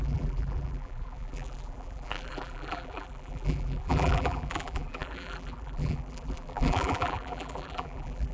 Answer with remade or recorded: remade